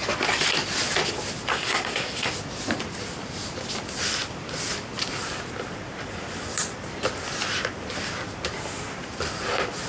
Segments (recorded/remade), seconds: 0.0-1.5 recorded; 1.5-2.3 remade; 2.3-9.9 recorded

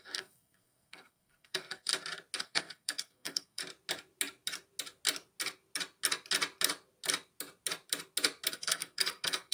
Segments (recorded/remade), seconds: 0.0-1.9 remade; 1.9-2.4 recorded; 2.4-3.6 remade; 3.6-8.5 recorded; 8.5-9.5 remade

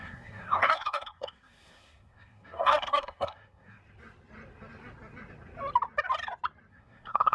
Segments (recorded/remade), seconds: 0.0-3.8 remade; 3.8-6.7 recorded; 6.7-7.3 remade

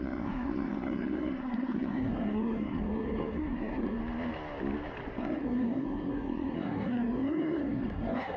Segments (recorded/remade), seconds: 0.0-4.0 remade; 4.0-5.2 recorded; 5.2-8.4 remade

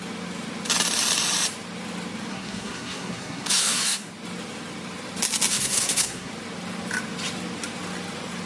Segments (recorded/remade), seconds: 0.0-2.3 recorded; 2.3-4.1 remade; 4.1-5.5 recorded; 5.5-6.3 remade; 6.3-8.5 recorded

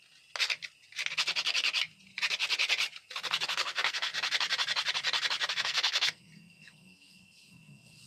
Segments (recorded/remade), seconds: 0.0-3.5 recorded; 3.5-4.1 remade; 4.1-5.5 recorded; 5.5-8.1 remade